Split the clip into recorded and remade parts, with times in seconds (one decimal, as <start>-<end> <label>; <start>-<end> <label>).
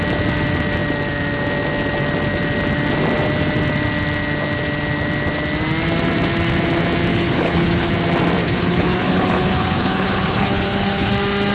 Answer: 0.0-7.1 recorded; 7.1-7.9 remade; 7.9-8.4 recorded; 8.4-11.1 remade; 11.1-11.5 recorded